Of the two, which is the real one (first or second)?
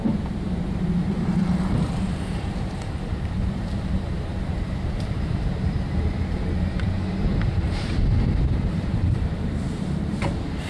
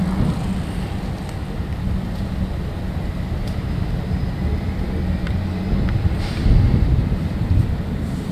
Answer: second